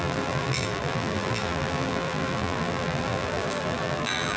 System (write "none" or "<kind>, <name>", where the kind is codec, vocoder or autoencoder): vocoder, BigVGAN v2